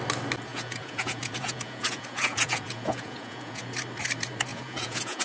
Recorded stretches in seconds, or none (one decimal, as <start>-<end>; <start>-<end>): 0.0-0.5; 3.6-4.5